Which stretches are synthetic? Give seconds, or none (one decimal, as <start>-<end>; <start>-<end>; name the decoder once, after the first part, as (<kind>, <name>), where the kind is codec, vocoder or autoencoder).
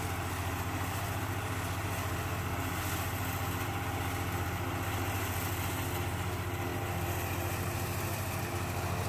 none